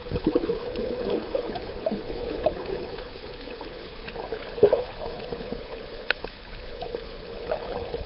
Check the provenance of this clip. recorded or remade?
remade